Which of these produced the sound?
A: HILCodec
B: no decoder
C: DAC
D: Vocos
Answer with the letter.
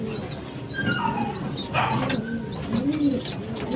B